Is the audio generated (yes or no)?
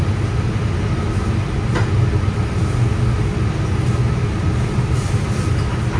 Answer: no